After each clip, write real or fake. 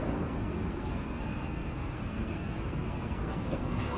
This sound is fake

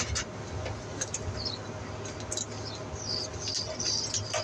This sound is real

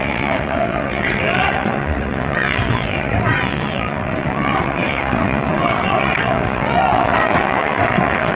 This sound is fake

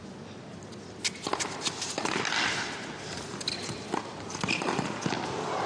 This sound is real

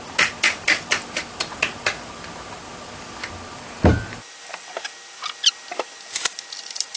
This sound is real